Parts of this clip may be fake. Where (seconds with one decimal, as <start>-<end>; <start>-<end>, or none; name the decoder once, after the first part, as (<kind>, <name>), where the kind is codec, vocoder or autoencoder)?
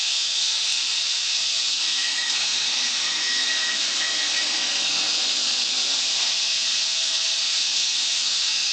0.0-8.7 (codec, SNAC)